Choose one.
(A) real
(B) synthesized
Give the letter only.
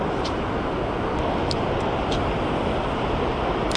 A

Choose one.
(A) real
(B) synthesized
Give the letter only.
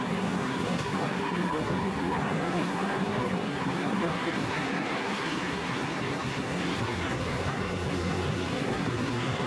B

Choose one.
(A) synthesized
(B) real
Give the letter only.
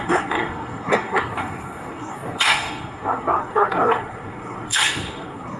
A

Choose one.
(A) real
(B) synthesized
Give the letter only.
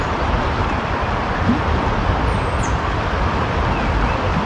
A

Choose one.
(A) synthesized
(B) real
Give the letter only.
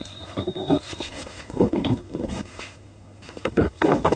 A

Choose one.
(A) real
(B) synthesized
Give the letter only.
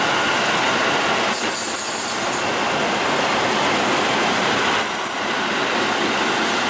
A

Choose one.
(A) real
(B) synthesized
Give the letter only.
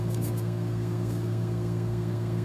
B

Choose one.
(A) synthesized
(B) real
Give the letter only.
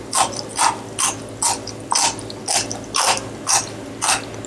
B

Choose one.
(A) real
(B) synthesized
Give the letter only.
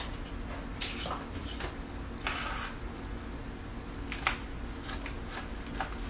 A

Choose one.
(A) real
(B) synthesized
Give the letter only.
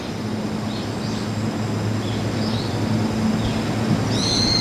A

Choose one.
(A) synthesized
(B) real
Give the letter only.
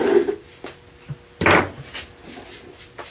B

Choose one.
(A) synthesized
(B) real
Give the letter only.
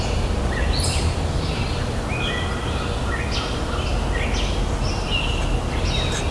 B